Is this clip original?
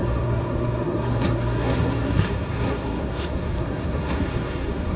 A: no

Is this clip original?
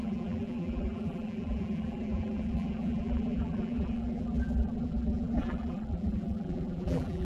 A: no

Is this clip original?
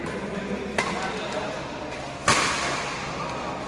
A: yes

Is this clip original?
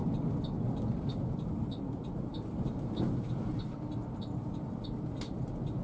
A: yes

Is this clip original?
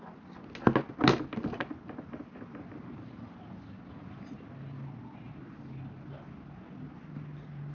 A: yes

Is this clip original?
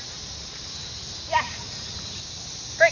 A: yes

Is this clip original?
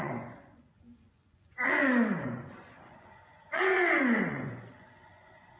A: no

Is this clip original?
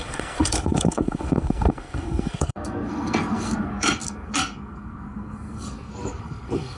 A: no